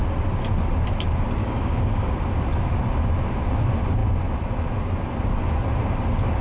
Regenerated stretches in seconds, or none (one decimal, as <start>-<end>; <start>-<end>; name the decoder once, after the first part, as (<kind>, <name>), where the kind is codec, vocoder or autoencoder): 1.4-2.1 (codec, DAC)